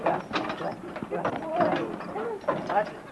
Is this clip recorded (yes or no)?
yes